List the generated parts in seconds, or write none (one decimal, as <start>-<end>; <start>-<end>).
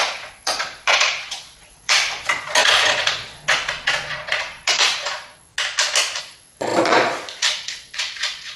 0.0-5.5; 6.2-8.6